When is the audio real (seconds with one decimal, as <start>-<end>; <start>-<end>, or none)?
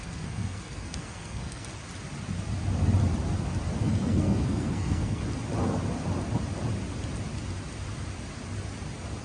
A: 1.7-3.8; 5.2-9.2